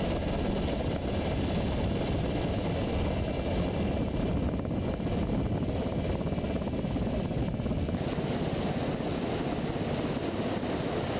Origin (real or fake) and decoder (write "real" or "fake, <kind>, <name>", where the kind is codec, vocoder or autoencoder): real